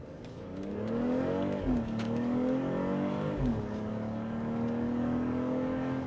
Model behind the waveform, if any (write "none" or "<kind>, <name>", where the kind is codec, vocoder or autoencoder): codec, DAC